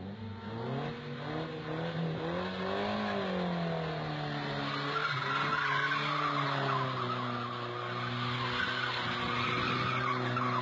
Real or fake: real